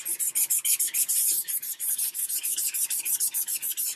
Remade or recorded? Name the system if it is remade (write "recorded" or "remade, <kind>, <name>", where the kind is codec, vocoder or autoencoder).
recorded